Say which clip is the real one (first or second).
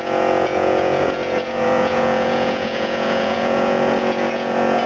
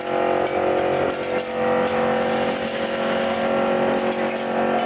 second